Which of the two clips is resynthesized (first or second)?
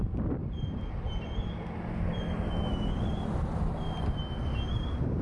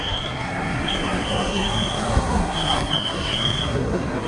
second